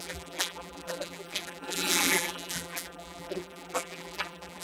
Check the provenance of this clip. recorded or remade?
remade